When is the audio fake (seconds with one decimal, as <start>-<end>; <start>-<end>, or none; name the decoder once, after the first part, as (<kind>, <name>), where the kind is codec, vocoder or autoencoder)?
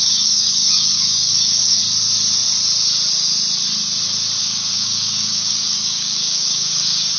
0.0-1.8 (codec, DAC); 4.4-7.2